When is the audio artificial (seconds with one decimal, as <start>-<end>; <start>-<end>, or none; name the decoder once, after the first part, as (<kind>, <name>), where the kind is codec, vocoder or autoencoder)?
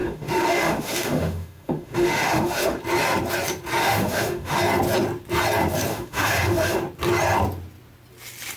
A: 0.0-2.8 (autoencoder, DAC-VAE); 3.8-4.6; 5.9-6.8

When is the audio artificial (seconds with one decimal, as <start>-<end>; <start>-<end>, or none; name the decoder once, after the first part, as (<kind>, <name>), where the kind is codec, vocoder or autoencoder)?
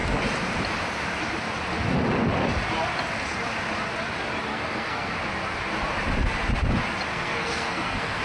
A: 4.5-5.2 (codec, SNAC); 7.1-8.2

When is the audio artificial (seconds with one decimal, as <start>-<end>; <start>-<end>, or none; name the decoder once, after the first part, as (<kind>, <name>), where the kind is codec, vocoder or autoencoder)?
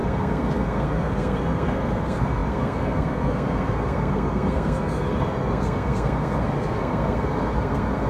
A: 0.0-8.1 (codec, SNAC)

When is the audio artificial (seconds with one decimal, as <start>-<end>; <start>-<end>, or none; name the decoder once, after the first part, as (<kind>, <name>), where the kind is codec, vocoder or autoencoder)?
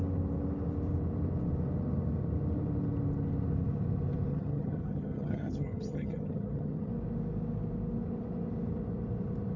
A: 4.3-6.9 (vocoder, HiFi-GAN)